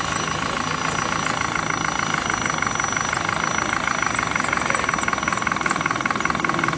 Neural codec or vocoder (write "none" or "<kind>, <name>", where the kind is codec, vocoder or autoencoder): none